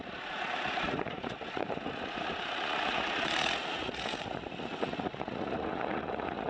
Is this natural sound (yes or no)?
no